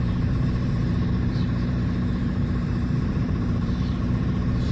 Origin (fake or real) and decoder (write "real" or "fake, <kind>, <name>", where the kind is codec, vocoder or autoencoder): fake, vocoder, BigVGAN v2